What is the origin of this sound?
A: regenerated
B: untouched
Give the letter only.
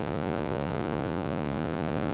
A